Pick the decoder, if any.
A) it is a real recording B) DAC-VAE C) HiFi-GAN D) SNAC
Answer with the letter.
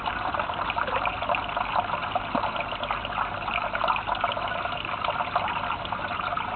A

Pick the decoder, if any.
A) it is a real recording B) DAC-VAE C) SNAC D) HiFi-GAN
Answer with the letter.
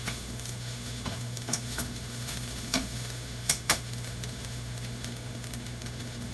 B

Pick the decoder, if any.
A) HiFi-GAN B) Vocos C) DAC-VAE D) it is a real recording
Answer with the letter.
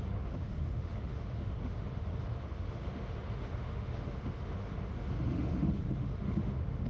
C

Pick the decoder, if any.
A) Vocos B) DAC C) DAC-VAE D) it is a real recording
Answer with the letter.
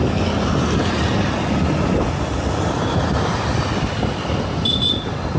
D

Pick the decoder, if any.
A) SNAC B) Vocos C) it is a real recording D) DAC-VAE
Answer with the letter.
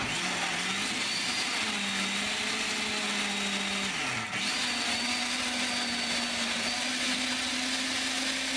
C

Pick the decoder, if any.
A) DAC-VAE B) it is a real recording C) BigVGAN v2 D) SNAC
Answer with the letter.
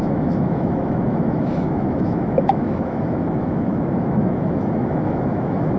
A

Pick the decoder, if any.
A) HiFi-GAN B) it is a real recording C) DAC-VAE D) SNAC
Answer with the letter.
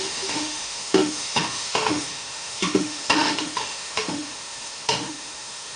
C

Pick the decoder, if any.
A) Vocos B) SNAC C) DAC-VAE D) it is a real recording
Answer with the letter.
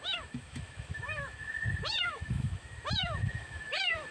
C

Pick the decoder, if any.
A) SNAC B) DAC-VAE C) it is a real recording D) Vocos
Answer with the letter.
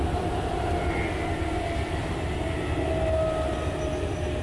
C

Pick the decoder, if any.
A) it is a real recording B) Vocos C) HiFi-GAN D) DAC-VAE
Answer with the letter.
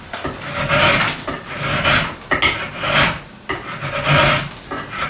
A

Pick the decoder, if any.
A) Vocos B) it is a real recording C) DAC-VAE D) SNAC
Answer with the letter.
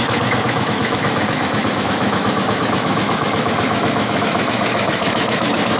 C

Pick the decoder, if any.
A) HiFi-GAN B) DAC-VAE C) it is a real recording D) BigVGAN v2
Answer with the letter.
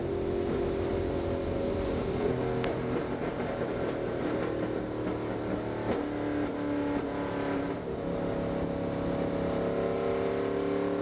C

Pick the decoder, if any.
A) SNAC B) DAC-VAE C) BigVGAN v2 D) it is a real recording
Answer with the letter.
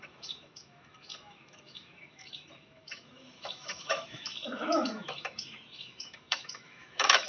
B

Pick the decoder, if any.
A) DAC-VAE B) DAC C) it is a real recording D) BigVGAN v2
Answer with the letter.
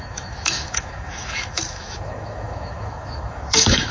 A